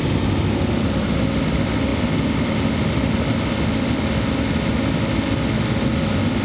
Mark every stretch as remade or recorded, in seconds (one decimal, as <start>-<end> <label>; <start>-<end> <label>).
0.0-6.4 recorded